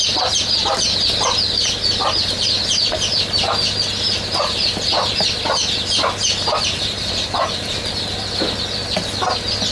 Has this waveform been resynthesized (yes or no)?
no